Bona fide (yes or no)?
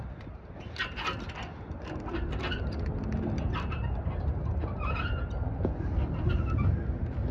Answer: yes